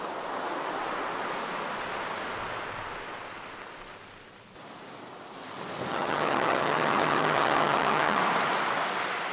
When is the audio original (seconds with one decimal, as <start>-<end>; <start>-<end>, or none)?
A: 0.0-5.9; 8.2-9.3